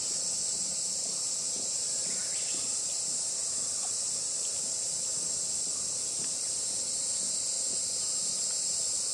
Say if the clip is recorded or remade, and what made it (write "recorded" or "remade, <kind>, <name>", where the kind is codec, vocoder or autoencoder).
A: recorded